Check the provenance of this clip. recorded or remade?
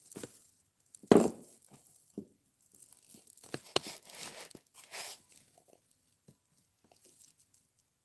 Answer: recorded